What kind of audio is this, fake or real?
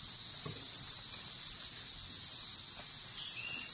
real